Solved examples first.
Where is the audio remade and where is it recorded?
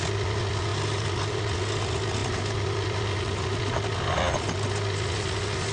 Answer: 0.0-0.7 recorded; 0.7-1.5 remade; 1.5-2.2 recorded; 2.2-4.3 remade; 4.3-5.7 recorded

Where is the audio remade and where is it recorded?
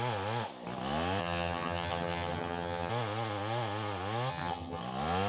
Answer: 0.0-1.2 recorded; 1.2-2.9 remade; 2.9-4.3 recorded; 4.3-4.8 remade; 4.8-5.3 recorded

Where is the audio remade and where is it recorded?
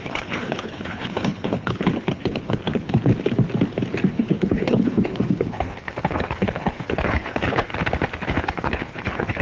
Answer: 0.0-3.1 remade; 3.1-4.1 recorded; 4.1-7.7 remade; 7.7-8.3 recorded; 8.3-9.4 remade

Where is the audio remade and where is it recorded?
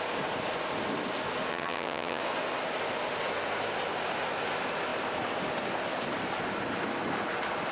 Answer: 0.0-1.5 recorded; 1.5-2.2 remade; 2.2-7.7 recorded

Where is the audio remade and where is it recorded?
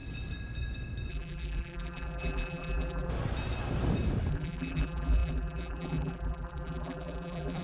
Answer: 0.0-1.1 recorded; 1.1-3.1 remade; 3.1-4.3 recorded; 4.3-7.6 remade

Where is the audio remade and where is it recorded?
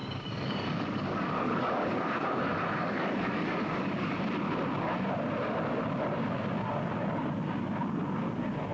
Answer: 0.0-4.2 remade; 4.2-8.7 recorded